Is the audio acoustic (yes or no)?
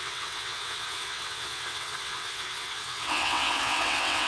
no